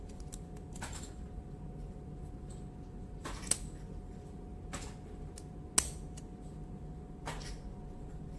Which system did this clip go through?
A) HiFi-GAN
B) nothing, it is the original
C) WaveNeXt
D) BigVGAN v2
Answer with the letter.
B